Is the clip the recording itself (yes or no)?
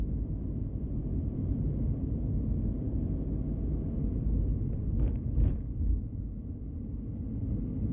yes